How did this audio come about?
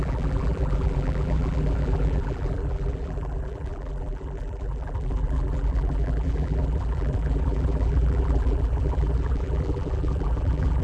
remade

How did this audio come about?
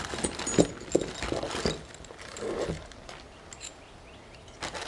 recorded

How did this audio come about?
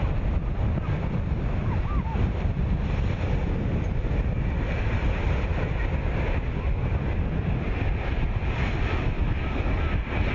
recorded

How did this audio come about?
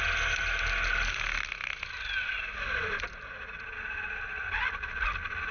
recorded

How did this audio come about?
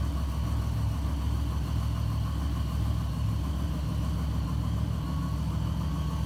recorded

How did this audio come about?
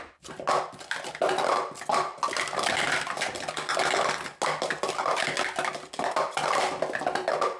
recorded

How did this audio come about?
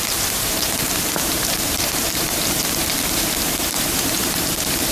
remade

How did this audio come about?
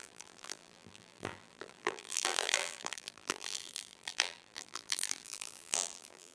remade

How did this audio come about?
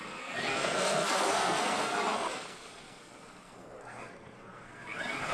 remade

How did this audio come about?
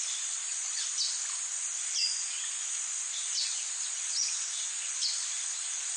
recorded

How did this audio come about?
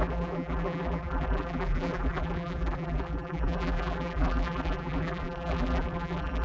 remade